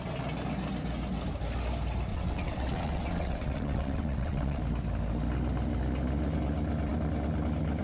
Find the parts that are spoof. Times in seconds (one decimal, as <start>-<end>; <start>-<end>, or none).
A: 2.1-4.6